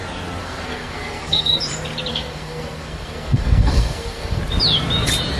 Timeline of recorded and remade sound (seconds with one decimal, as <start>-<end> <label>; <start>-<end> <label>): 0.0-0.4 recorded; 0.4-1.6 remade; 1.6-2.1 recorded; 2.1-4.4 remade; 4.4-5.4 recorded